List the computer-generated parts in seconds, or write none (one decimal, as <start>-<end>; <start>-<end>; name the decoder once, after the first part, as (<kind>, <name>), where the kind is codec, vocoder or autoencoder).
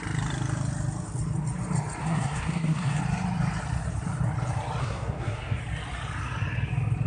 2.0-3.0 (codec, SNAC); 4.8-5.6